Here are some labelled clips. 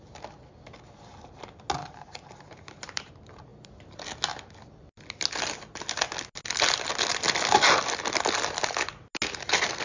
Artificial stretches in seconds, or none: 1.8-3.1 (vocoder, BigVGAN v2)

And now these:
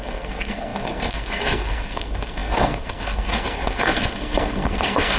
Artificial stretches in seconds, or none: 0.0-5.2 (codec, SNAC)

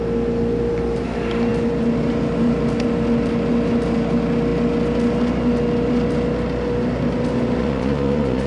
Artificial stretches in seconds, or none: 7.6-8.5 (vocoder, Vocos)

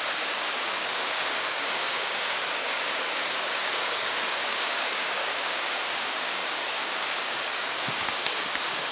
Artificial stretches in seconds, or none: 0.0-8.9 (codec, DAC)

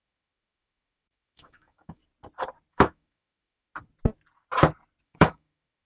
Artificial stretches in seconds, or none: 0.0-2.0 (autoencoder, DAC-VAE); 2.7-3.7; 5.0-5.9

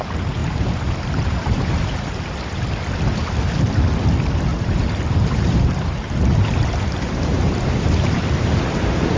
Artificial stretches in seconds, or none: 0.4-2.2 (vocoder, BigVGAN v2); 4.5-8.2

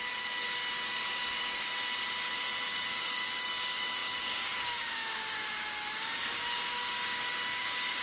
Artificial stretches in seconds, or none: 0.0-1.7 (codec, DAC); 2.6-8.0

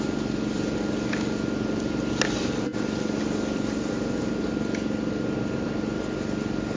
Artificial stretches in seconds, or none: none